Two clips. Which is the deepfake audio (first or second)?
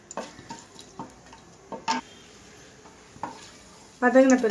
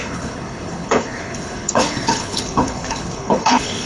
second